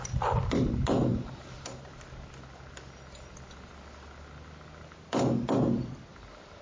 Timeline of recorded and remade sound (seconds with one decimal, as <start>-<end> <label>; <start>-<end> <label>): 0.0-1.1 recorded; 1.1-1.9 remade; 1.9-6.6 recorded